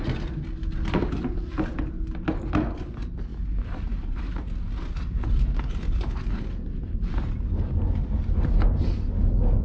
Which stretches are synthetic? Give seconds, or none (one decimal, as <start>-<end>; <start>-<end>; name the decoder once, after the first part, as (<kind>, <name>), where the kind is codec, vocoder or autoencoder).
3.3-4.3 (vocoder, BigVGAN v2)